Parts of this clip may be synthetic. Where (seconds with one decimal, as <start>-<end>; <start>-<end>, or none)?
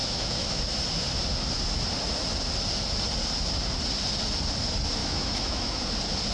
0.0-0.6; 5.0-5.8